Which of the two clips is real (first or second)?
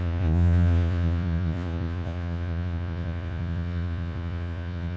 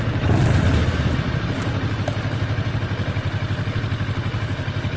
second